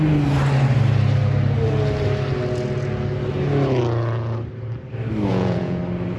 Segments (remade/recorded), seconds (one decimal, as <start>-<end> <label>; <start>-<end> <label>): 0.0-5.3 recorded; 5.3-5.8 remade; 5.8-6.2 recorded